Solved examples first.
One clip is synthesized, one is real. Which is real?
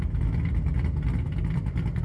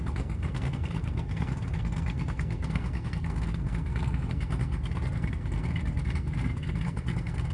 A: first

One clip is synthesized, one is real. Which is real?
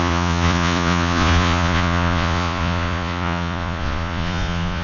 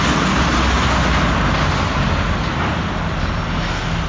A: second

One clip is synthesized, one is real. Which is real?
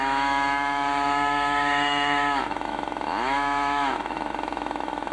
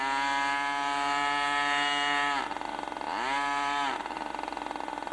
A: second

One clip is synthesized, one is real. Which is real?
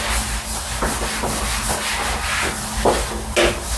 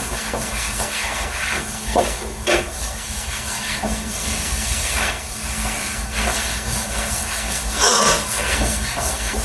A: first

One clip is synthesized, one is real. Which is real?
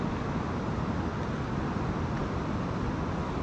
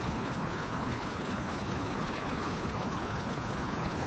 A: first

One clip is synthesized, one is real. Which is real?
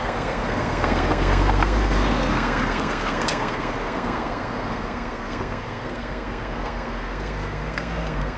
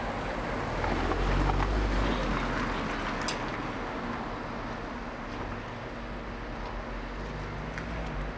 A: second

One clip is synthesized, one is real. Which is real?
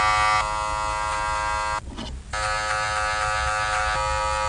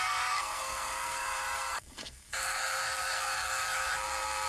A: first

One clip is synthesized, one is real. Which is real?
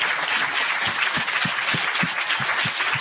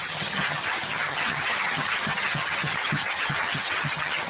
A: first